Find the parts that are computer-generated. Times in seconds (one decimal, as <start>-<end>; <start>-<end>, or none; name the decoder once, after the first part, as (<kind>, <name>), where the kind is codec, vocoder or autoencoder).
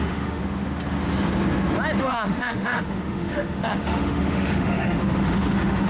0.0-0.4 (autoencoder, DAC-VAE); 2.0-5.9